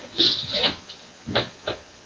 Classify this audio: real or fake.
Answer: fake